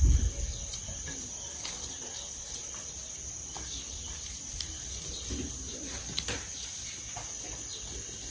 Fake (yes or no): no